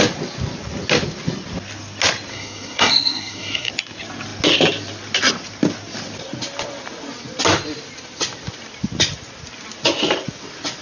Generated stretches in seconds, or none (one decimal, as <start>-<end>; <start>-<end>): 2.3-3.7